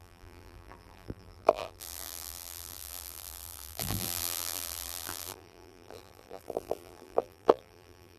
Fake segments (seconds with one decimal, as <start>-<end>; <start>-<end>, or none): 0.0-8.2